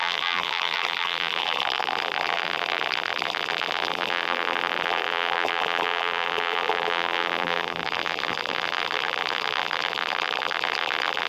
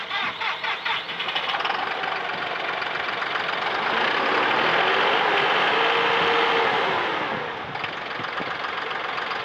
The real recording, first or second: second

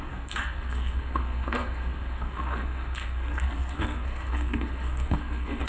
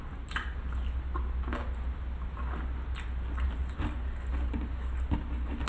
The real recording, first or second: second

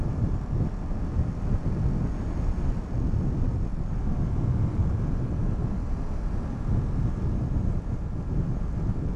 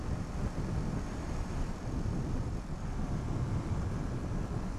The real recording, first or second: first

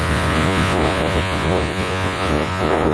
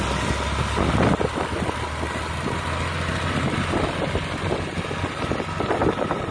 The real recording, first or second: second